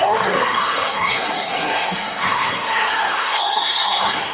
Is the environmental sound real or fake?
fake